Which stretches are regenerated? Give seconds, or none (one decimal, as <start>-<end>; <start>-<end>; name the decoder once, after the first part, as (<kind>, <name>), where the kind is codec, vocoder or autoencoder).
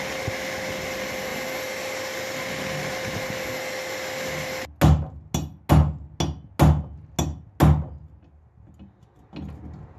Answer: none